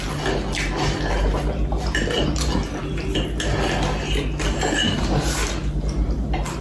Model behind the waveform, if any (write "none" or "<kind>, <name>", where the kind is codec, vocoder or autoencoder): none